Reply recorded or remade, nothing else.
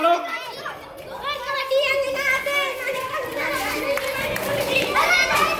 recorded